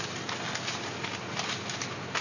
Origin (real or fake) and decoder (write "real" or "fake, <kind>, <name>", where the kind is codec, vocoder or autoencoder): real